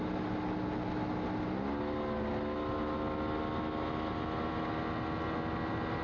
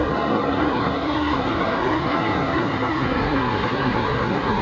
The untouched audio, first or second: first